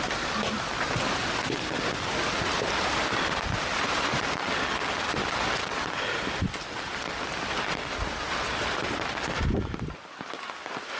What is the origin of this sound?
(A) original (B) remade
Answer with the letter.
A